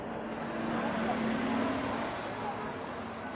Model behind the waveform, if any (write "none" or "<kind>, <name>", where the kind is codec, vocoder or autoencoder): none